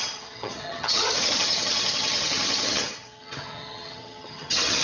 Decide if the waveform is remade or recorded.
remade